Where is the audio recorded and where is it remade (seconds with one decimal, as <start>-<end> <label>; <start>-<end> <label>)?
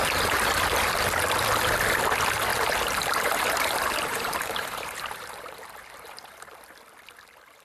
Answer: 0.0-2.5 recorded; 2.5-6.4 remade; 6.4-7.6 recorded